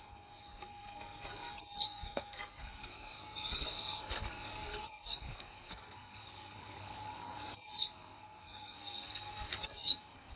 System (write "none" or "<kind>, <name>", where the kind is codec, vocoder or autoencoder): codec, SNAC